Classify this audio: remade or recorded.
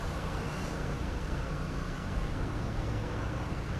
remade